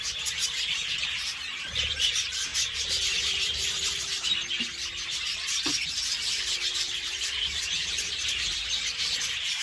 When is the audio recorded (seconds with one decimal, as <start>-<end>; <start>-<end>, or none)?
none